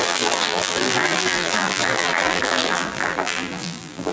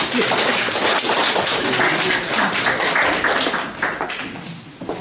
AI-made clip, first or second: first